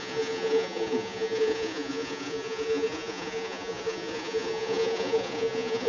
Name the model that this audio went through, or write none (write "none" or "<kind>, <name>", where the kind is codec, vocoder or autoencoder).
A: vocoder, Vocos